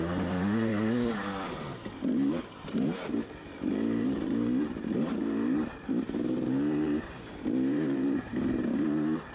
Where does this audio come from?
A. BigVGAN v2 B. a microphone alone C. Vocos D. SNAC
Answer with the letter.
A